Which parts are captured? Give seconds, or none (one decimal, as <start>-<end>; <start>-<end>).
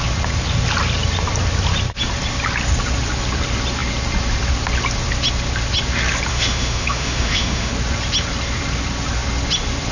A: 0.0-6.3; 7.7-9.9